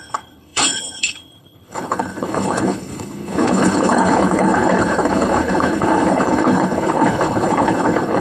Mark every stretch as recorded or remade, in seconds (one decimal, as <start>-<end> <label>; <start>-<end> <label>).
0.0-8.2 remade